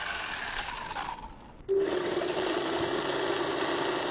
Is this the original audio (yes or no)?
yes